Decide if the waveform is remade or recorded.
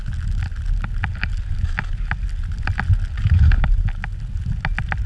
recorded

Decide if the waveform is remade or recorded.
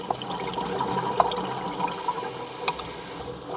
recorded